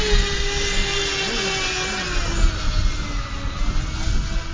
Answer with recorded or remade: recorded